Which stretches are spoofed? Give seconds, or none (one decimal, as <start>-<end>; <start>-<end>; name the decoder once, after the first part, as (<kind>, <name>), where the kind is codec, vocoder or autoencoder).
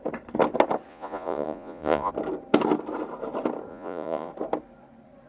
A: 0.9-2.1 (vocoder, Vocos); 3.7-4.3